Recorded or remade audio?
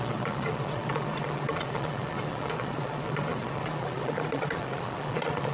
remade